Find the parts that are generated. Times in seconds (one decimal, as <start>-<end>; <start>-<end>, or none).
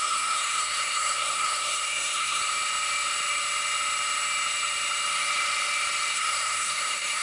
0.0-2.4; 6.1-7.2